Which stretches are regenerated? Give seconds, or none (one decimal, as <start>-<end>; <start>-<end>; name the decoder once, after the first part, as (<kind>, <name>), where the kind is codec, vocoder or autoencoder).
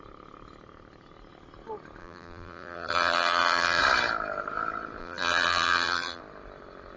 2.0-3.8 (vocoder, BigVGAN v2); 5.0-6.2